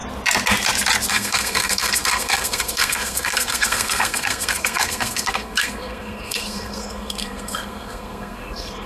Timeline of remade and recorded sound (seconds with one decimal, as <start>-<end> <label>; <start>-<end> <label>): 0.0-1.1 recorded; 1.1-8.9 remade